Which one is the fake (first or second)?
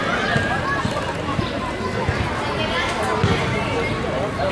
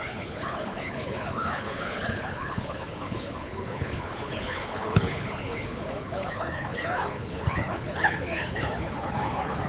second